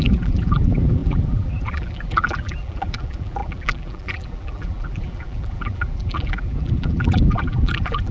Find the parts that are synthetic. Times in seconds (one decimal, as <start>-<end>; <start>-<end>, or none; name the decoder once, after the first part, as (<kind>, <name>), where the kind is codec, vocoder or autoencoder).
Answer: 0.0-8.1 (vocoder, BigVGAN v2)